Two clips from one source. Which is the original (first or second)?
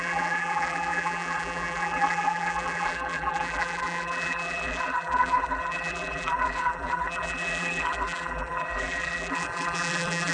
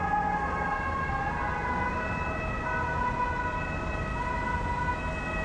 second